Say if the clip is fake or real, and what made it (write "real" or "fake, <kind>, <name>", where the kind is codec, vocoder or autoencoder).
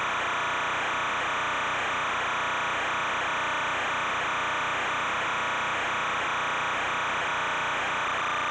real